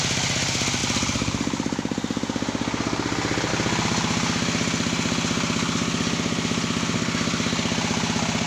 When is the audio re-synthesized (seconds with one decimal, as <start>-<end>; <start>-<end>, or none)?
none